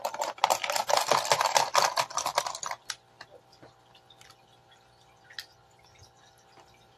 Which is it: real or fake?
real